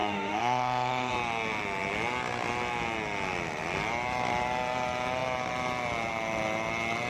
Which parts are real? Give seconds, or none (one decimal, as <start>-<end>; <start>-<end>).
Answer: 1.1-7.1